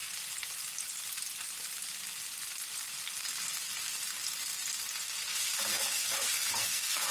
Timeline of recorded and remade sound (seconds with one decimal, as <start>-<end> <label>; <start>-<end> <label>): 0.0-5.7 recorded; 5.7-7.1 remade